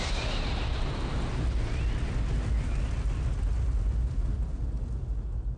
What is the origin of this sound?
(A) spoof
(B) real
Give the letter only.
B